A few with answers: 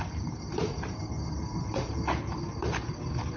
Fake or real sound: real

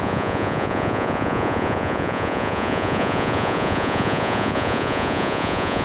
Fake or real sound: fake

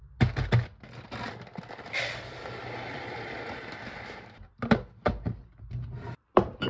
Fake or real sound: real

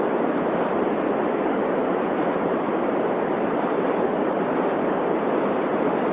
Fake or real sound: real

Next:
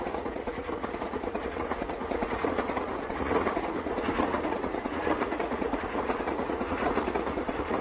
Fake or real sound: fake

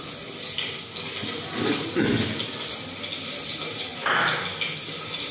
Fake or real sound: real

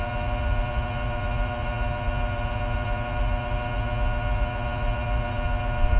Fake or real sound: fake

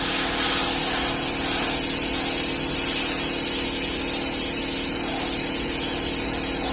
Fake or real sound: real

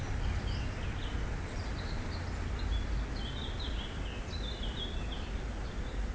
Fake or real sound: real